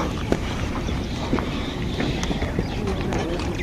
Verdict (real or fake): real